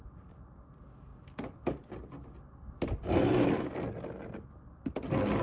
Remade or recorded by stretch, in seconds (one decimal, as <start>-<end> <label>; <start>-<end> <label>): 0.0-5.4 recorded